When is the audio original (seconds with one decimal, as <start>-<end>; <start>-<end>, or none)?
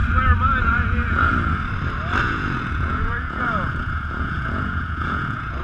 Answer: 0.0-0.6; 1.3-2.2